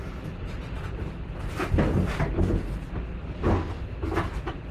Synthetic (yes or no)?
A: no